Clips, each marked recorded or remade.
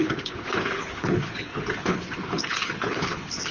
remade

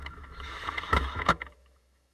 remade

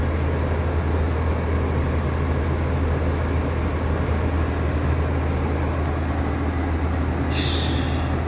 recorded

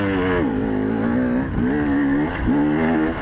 recorded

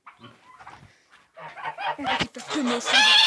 recorded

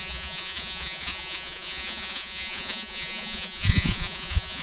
remade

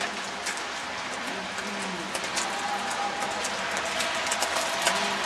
recorded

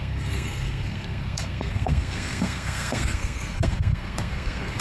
remade